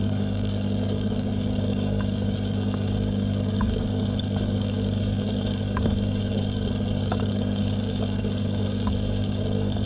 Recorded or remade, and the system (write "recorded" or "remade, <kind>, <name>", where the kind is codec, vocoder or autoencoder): remade, codec, DAC